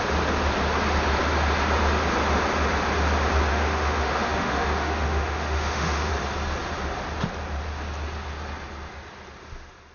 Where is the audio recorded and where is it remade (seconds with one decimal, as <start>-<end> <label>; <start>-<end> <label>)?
0.0-3.5 recorded; 3.5-6.1 remade; 6.1-9.9 recorded